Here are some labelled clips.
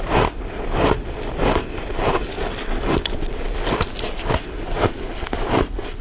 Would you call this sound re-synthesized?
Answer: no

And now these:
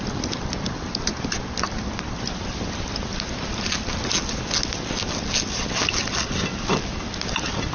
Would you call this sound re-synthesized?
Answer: no